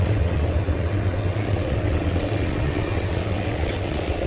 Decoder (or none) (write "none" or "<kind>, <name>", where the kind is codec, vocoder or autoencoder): vocoder, WaveNeXt